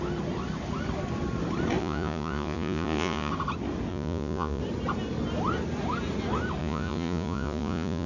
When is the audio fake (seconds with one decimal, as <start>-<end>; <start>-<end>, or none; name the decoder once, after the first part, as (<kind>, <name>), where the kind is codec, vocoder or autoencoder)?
1.8-3.3 (vocoder, Vocos); 3.9-4.6; 6.6-8.1